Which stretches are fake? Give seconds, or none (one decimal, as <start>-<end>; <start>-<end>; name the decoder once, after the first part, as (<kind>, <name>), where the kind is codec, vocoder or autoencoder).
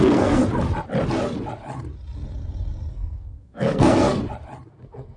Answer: 0.0-0.4 (codec, SNAC); 2.9-4.2; 4.7-5.2